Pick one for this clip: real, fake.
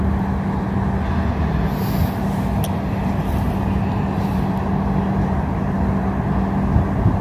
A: real